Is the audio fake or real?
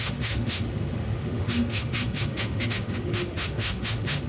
fake